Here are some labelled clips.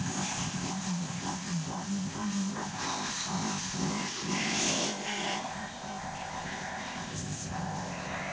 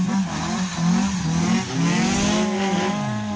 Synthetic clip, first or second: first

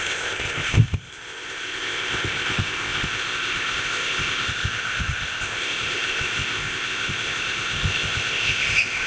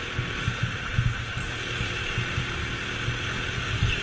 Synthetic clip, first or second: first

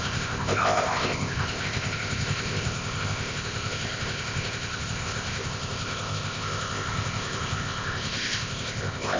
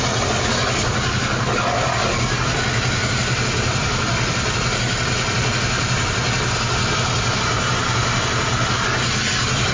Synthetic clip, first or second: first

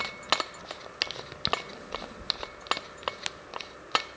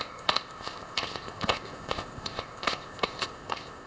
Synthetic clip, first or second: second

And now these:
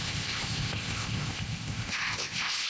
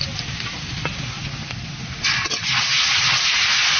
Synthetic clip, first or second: first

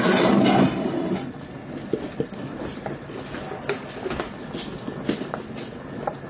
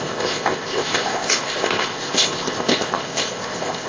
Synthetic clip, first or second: second